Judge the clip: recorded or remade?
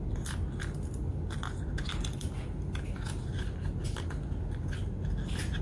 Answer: recorded